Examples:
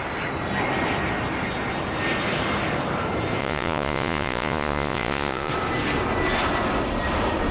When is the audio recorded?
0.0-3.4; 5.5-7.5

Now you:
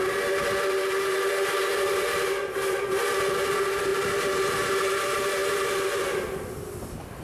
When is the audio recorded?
0.0-7.2

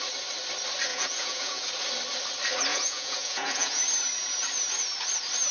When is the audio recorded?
0.0-0.9; 1.7-2.7; 3.8-5.5

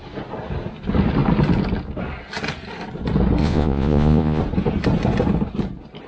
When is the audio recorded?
0.0-3.4; 4.4-6.1

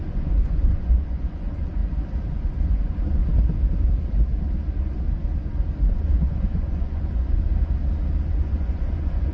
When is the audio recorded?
1.8-2.3; 3.2-5.9; 7.5-8.3